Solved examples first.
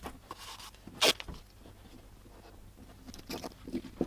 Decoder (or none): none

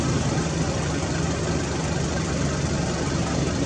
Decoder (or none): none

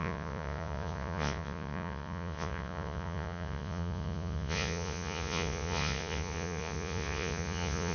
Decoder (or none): vocoder, Vocos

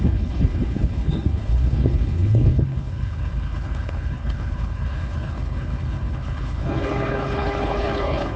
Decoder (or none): codec, HILCodec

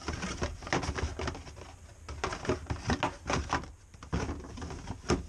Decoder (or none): none